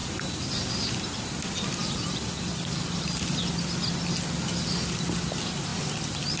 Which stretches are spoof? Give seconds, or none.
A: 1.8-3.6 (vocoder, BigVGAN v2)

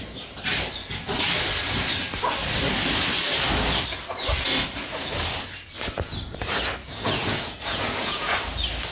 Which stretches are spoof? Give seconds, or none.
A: 6.8-8.4 (vocoder, Vocos)

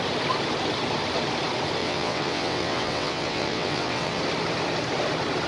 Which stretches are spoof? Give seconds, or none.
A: 1.8-4.2 (vocoder, WaveNeXt)

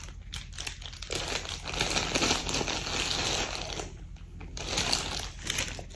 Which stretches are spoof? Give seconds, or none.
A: none

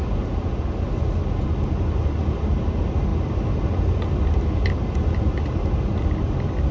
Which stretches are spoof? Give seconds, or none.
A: none